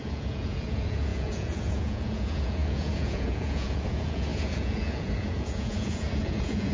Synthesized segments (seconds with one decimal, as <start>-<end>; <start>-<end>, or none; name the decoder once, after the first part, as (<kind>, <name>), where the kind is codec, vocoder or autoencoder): 0.0-6.7 (vocoder, Vocos)